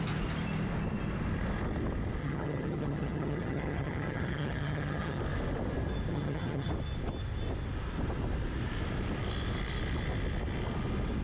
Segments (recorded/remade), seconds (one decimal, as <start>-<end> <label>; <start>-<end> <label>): 0.0-2.2 recorded; 2.2-5.2 remade; 5.2-6.1 recorded; 6.1-6.7 remade; 6.7-11.2 recorded